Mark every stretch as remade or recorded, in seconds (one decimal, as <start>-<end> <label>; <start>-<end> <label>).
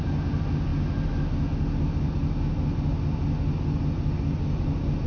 0.0-5.1 recorded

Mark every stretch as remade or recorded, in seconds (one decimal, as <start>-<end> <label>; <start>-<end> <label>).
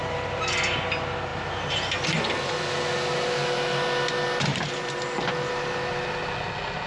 0.0-4.5 recorded; 4.5-5.2 remade; 5.2-6.9 recorded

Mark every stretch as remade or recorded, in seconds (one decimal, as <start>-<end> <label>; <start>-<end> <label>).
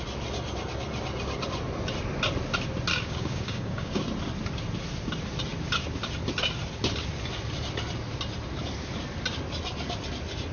0.0-2.9 recorded; 2.9-4.0 remade; 4.0-10.5 recorded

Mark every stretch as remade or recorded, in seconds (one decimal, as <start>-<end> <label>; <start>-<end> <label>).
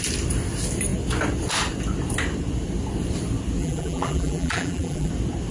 0.0-3.6 recorded; 3.6-5.1 remade; 5.1-5.5 recorded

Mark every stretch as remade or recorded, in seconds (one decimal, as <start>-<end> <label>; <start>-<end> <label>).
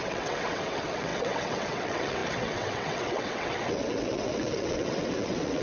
0.0-5.6 remade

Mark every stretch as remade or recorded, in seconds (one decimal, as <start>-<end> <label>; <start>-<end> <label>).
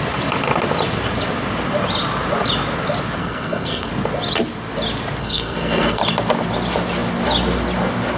0.0-3.2 recorded; 3.2-3.9 remade; 3.9-5.2 recorded; 5.2-6.0 remade; 6.0-8.2 recorded